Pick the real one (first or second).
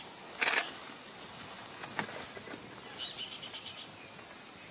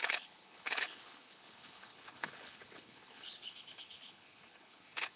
first